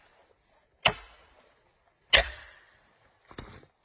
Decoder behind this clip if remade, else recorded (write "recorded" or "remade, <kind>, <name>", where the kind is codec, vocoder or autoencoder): recorded